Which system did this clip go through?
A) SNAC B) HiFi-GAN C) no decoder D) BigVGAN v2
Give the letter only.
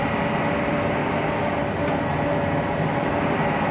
C